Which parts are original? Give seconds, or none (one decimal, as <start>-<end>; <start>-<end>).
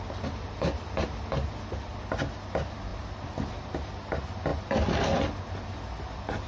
0.0-6.5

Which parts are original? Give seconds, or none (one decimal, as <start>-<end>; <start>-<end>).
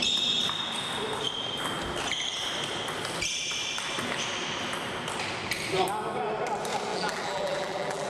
0.0-6.9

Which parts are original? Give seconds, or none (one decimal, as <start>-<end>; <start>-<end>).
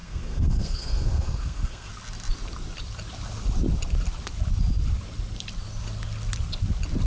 1.9-7.1